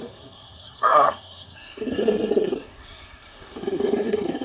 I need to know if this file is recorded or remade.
remade